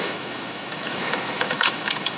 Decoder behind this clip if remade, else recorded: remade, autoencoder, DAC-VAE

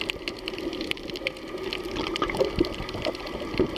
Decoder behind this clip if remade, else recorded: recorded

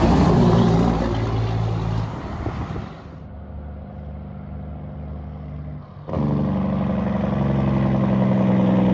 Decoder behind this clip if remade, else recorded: recorded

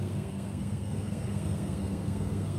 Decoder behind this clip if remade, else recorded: remade, codec, SNAC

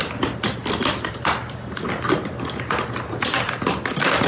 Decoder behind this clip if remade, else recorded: recorded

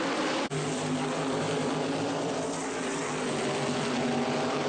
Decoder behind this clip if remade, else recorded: remade, vocoder, BigVGAN v2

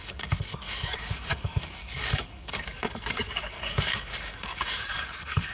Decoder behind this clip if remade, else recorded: remade, codec, DAC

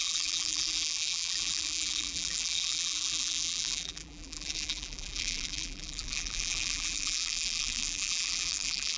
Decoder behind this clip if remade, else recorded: remade, vocoder, BigVGAN v2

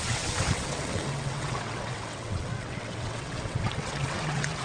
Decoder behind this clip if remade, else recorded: remade, vocoder, WaveNeXt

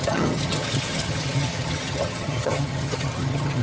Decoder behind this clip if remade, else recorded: remade, vocoder, HiFi-GAN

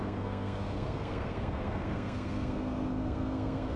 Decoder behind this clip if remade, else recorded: remade, codec, SNAC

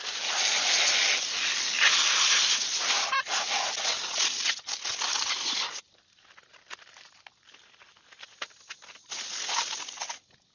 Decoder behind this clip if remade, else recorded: recorded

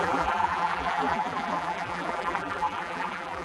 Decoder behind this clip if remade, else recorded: remade, vocoder, BigVGAN v2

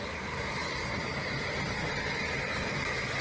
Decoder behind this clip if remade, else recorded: recorded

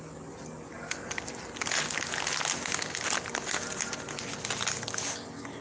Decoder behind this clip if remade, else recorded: recorded